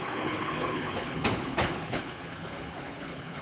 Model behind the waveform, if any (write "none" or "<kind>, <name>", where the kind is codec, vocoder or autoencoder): codec, HILCodec